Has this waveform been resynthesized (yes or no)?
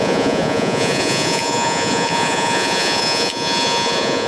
yes